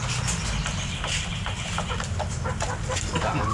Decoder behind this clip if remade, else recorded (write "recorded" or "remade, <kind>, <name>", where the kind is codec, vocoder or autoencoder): recorded